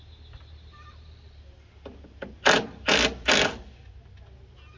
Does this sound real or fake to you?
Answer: real